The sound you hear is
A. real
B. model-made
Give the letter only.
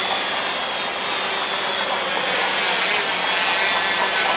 A